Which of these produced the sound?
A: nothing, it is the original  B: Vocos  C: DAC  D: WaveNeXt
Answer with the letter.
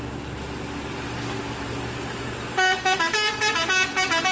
A